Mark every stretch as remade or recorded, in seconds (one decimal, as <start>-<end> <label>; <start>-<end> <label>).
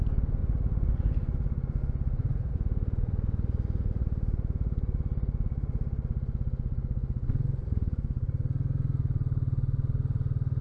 0.0-10.6 recorded